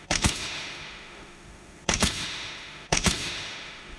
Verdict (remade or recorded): remade